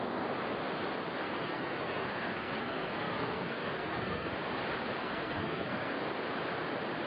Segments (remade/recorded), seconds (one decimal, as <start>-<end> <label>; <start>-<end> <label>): 0.0-1.2 recorded; 1.2-4.3 remade; 4.3-5.0 recorded; 5.0-6.0 remade; 6.0-7.1 recorded